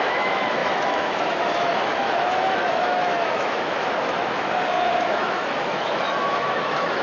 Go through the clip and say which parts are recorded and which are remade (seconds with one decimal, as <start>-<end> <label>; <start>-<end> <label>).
0.0-7.0 remade